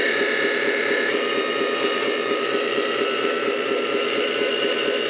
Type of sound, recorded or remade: remade